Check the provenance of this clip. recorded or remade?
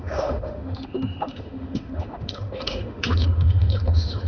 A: remade